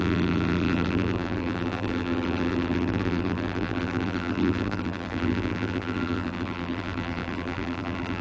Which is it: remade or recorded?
remade